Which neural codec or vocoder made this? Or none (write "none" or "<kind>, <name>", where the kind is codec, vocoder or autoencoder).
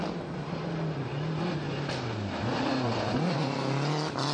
none